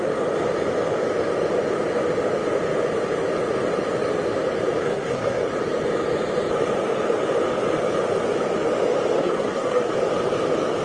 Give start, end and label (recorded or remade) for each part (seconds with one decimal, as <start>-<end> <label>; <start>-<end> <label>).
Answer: 0.0-4.8 recorded; 4.8-5.5 remade; 5.5-9.2 recorded; 9.2-9.9 remade; 9.9-10.8 recorded